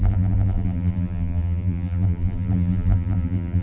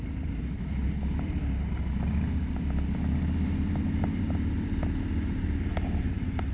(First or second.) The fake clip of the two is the first